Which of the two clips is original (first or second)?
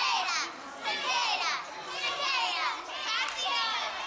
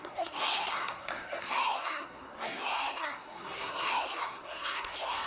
first